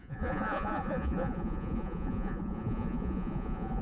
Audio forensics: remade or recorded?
remade